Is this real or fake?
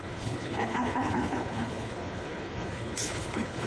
fake